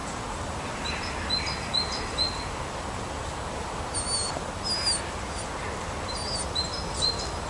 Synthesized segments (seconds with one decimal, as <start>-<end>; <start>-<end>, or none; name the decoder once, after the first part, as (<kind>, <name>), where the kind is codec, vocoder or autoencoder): none